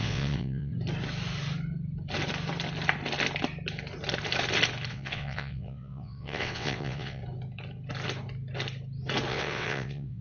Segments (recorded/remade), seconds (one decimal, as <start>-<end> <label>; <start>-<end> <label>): 0.0-0.7 remade; 0.7-4.9 recorded; 4.9-7.2 remade; 7.2-9.3 recorded; 9.3-10.2 remade